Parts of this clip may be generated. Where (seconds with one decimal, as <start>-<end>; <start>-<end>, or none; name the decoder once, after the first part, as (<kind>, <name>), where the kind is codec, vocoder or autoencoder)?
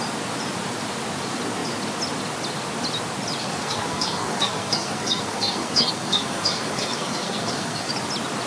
3.4-7.9 (codec, SNAC)